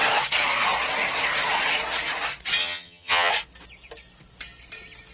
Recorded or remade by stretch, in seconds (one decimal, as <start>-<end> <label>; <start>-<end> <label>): 0.0-2.6 recorded; 2.6-3.3 remade; 3.3-5.1 recorded